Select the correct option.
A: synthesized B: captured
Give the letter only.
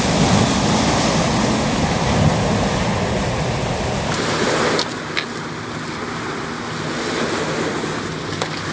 B